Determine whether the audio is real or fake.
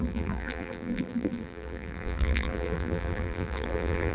fake